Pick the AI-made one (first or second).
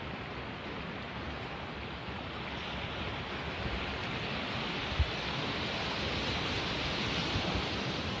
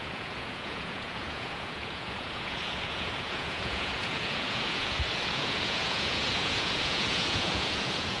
second